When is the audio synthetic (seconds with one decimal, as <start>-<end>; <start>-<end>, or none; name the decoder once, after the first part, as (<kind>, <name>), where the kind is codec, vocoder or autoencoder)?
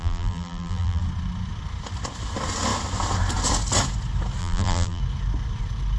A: 0.0-1.0 (vocoder, BigVGAN v2); 4.4-5.0